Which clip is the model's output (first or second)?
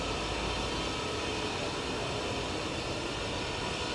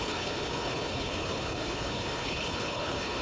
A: second